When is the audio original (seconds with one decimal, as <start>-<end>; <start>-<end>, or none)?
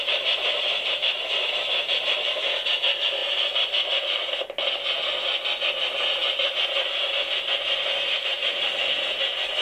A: 3.2-7.1